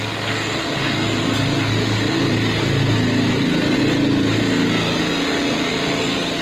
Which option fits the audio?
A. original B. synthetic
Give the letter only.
A